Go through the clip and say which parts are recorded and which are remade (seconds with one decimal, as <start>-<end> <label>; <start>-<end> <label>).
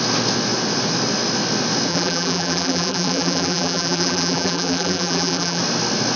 0.0-1.9 recorded; 1.9-5.6 remade; 5.6-6.2 recorded